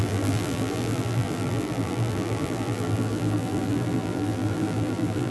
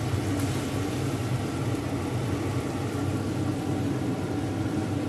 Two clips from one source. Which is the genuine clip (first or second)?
second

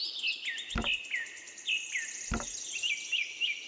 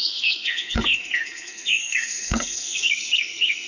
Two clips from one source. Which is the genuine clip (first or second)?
first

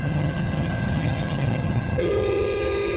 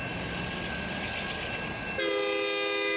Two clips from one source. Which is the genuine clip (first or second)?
second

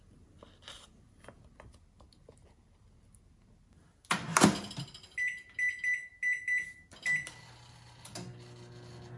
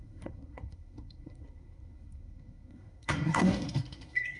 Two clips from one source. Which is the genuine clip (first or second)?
first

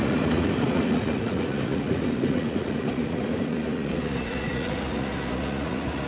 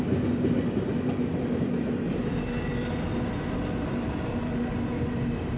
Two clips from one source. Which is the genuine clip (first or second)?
second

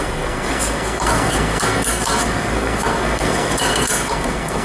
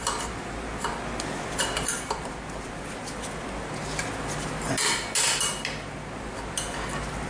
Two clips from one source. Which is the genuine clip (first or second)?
second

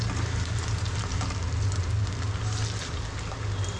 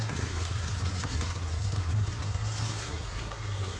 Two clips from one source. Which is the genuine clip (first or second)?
first